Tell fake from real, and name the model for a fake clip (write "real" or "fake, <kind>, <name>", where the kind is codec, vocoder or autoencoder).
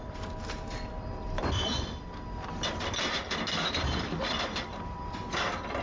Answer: fake, vocoder, BigVGAN v2